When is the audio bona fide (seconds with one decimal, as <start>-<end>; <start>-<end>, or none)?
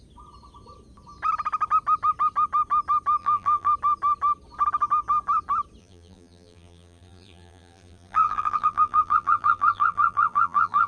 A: 0.0-3.2; 3.7-5.8